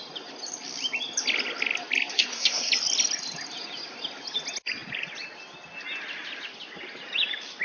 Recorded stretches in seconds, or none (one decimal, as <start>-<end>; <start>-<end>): 0.0-2.1; 2.7-7.6